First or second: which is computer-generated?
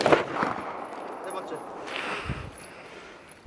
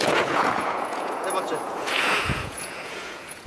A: second